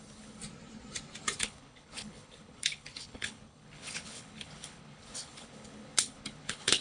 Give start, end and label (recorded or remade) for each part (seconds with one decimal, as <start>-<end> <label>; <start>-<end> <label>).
0.0-0.4 remade; 0.4-1.4 recorded; 1.4-6.8 remade